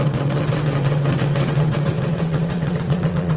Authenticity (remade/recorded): remade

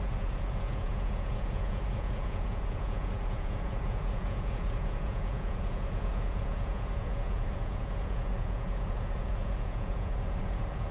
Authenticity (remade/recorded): remade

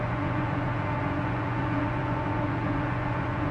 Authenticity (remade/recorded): remade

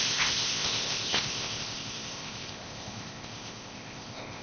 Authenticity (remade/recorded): remade